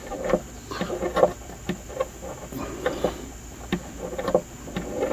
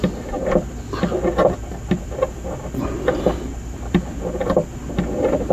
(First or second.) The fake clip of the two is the second